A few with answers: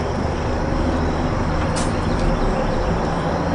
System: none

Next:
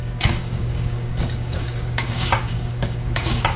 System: codec, DAC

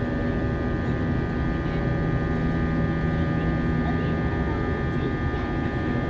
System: none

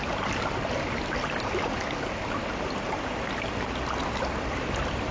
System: none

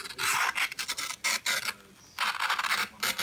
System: none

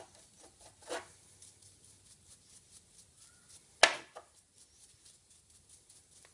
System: none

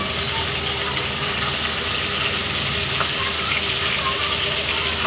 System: none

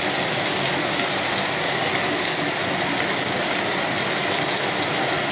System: none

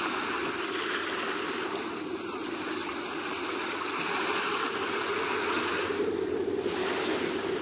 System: vocoder, BigVGAN v2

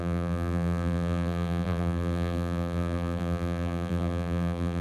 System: vocoder, BigVGAN v2